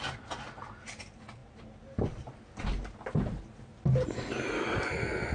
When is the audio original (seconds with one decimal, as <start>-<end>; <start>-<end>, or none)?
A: 0.0-5.3

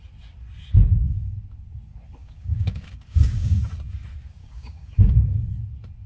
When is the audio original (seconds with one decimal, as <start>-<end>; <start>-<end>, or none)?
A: 0.0-2.2; 3.6-4.4; 5.5-6.1